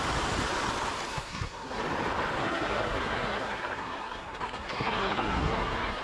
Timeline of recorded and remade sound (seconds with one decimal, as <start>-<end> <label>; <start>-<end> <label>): 0.0-1.1 recorded; 1.1-1.8 remade; 1.8-2.4 recorded; 2.4-6.0 remade